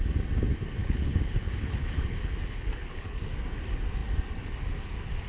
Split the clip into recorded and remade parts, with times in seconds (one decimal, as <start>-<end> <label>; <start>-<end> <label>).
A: 0.0-0.8 recorded; 0.8-3.2 remade; 3.2-5.3 recorded